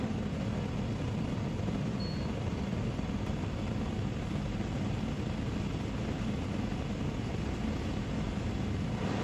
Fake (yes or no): no